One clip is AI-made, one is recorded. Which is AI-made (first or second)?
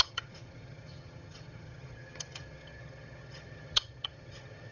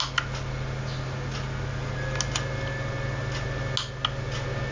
first